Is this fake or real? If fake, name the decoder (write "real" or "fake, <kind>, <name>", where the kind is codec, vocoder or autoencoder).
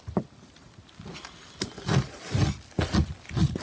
real